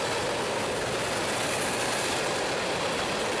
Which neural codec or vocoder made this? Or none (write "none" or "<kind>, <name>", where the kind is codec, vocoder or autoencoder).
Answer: none